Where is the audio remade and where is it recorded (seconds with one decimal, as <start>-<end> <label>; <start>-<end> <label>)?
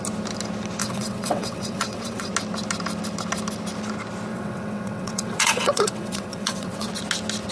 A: 0.0-0.8 recorded; 0.8-2.3 remade; 2.3-4.3 recorded; 4.3-6.9 remade; 6.9-7.5 recorded